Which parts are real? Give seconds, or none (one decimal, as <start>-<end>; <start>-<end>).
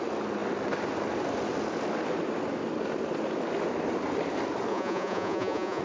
0.0-4.7